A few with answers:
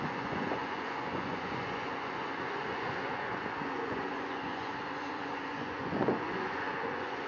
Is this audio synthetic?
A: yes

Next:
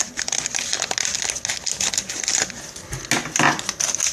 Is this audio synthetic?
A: no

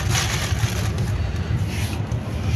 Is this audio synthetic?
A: no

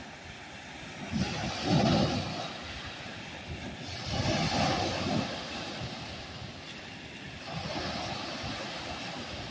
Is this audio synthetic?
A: no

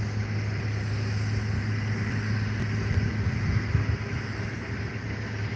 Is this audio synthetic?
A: no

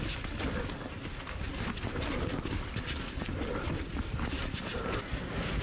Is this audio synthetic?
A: no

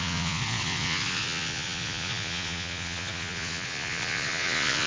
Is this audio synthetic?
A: yes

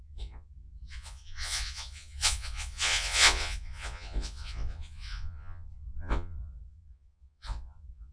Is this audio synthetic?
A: yes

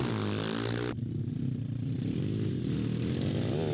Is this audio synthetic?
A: no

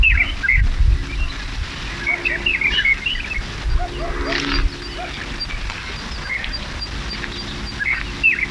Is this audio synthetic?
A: no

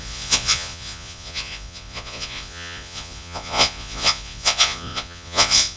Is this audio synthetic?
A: yes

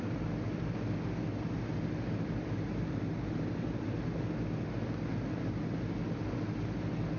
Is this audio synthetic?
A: no